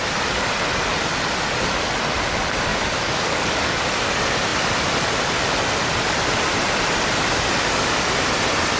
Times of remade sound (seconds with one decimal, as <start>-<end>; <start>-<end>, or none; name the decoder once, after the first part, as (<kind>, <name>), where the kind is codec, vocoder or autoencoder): 2.7-3.8 (codec, DAC)